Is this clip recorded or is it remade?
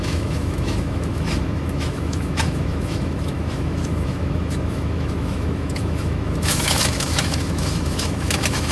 remade